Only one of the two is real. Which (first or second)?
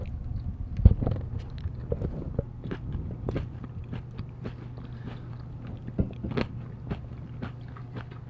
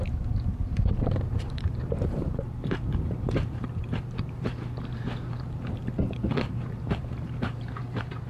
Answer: first